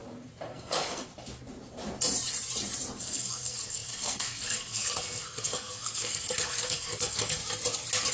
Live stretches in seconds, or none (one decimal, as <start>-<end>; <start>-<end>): 0.0-0.5; 1.1-3.0; 7.4-8.1